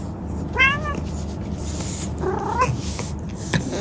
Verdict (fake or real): real